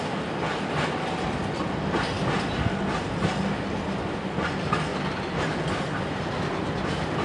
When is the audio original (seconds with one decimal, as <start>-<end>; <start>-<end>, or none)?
0.0-7.2